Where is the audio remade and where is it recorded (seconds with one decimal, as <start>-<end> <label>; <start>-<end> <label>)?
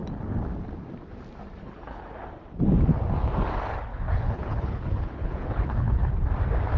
0.0-1.6 recorded; 1.6-2.1 remade; 2.1-3.9 recorded; 3.9-6.1 remade; 6.1-6.8 recorded